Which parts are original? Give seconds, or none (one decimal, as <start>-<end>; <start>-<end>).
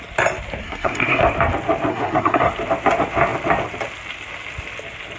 0.0-0.6; 1.2-1.9; 2.5-5.2